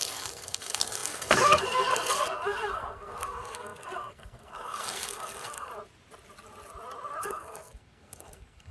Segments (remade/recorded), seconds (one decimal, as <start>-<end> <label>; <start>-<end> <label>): 0.0-5.7 remade; 5.7-7.2 recorded; 7.2-8.7 remade